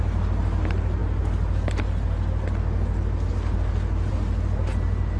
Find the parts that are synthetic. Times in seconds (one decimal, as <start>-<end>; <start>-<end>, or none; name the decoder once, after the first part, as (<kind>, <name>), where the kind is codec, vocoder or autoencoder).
none